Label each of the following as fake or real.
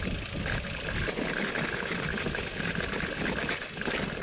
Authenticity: real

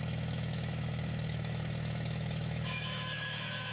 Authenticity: fake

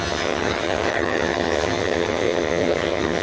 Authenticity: fake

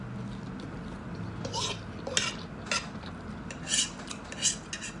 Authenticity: real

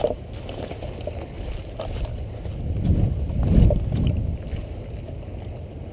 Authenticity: real